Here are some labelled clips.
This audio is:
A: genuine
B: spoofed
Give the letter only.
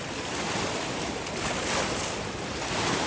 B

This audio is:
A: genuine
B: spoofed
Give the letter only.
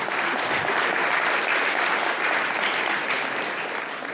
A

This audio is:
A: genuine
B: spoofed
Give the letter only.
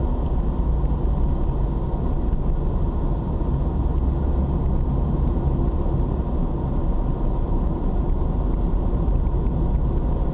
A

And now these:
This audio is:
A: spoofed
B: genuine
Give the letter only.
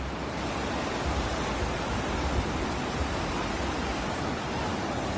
B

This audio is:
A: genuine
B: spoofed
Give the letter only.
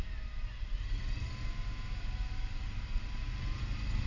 A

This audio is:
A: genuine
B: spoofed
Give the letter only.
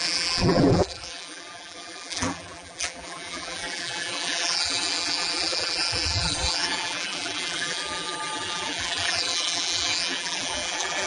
B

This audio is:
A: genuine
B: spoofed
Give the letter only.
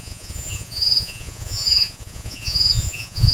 B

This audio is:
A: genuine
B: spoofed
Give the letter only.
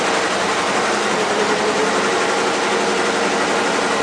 A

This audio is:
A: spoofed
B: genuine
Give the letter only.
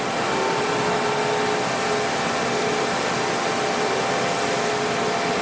B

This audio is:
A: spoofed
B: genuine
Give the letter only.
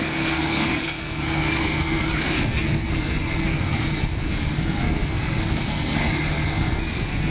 A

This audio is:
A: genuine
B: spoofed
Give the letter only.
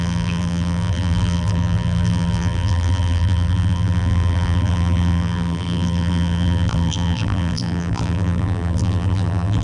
B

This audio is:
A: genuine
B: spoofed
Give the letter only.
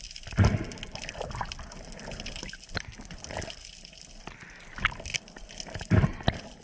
A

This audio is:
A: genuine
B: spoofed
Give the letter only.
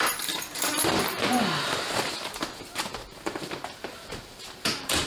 B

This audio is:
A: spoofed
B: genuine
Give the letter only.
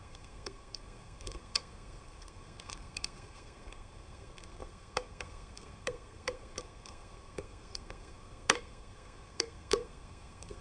A